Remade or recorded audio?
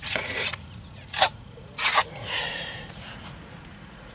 remade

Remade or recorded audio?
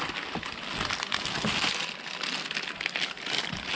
recorded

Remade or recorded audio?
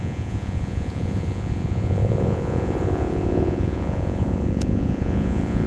remade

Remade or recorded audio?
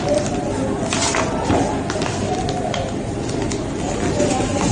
recorded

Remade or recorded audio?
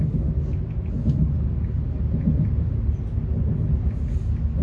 recorded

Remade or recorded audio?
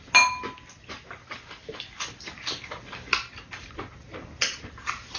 recorded